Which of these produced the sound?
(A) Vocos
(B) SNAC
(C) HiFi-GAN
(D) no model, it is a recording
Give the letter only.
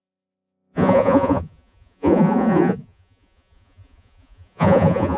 A